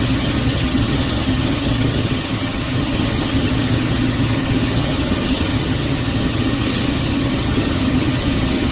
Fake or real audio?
fake